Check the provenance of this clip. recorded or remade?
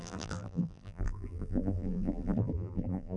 remade